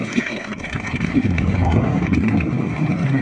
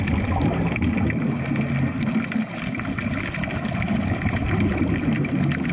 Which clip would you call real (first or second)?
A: second